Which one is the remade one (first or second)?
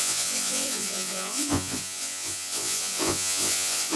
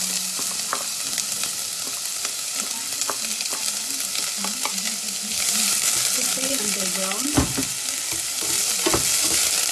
first